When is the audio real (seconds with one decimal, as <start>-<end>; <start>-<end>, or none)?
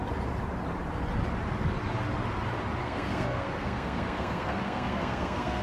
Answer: 0.0-2.8